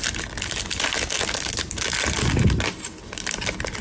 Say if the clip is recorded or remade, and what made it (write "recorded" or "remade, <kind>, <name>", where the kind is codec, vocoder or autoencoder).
recorded